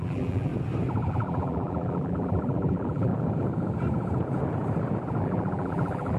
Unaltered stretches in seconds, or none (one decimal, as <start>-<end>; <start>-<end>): 0.5-1.1; 3.1-5.2